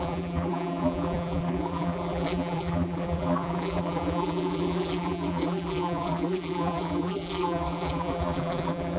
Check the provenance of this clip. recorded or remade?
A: remade